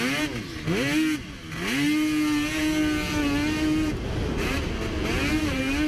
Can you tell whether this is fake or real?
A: real